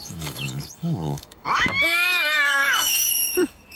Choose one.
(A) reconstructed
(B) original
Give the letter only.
A